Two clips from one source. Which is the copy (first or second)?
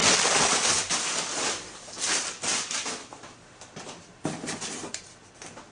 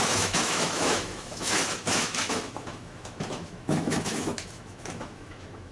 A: second